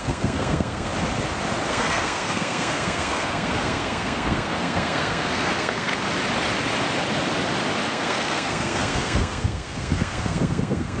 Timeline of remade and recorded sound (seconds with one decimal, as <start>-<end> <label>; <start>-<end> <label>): 0.0-0.9 remade; 0.9-1.7 recorded; 1.7-5.9 remade; 5.9-7.9 recorded; 7.9-11.0 remade